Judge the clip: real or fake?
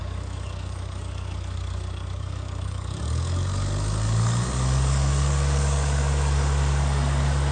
fake